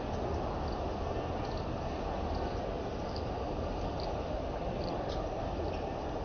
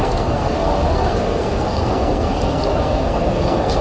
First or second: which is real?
first